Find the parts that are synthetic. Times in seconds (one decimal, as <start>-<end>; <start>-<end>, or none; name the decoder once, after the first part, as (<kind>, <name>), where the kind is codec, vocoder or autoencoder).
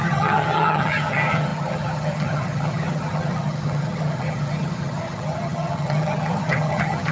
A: 0.0-7.1 (vocoder, HiFi-GAN)